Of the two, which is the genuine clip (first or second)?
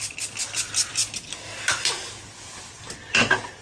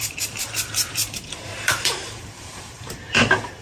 first